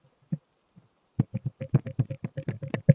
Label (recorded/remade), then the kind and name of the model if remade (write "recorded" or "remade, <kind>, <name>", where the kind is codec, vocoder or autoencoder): recorded